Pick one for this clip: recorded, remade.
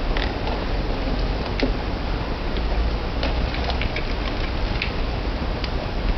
recorded